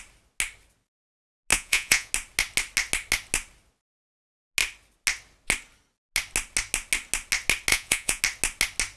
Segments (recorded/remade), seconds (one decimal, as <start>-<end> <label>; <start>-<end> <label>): 0.0-1.5 recorded; 1.5-2.1 remade; 2.1-7.7 recorded; 7.7-8.2 remade; 8.2-9.0 recorded